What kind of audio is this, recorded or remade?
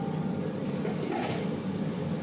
recorded